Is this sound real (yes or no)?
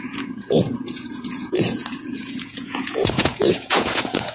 no